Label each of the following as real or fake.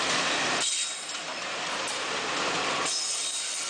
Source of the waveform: fake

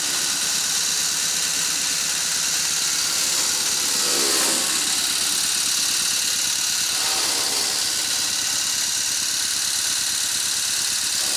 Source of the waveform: real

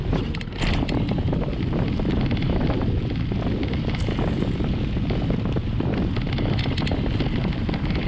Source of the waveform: real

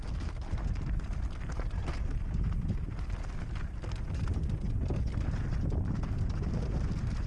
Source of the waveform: real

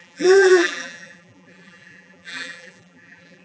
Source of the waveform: fake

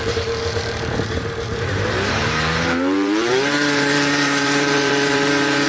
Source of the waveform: fake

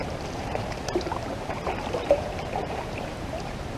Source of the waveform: fake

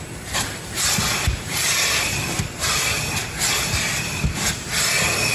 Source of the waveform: fake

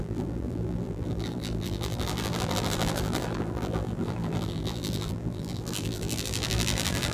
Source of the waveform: fake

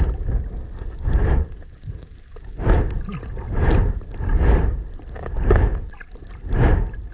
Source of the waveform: real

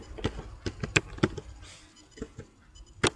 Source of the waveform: fake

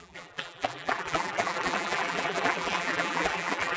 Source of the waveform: fake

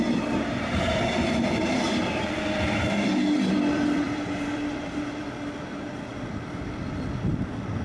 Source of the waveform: fake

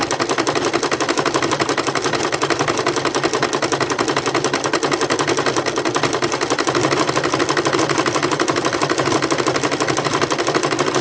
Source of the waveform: real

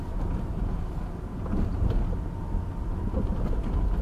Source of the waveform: real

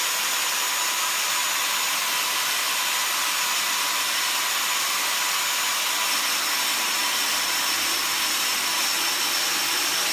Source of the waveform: real